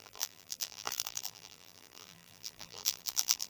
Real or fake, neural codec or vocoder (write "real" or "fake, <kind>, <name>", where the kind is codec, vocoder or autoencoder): fake, vocoder, BigVGAN v2